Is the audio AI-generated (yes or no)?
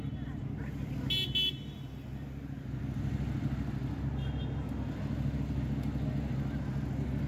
no